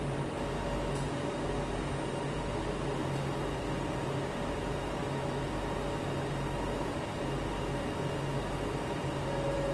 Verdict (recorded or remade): recorded